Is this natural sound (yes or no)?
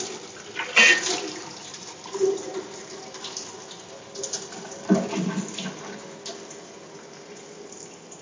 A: no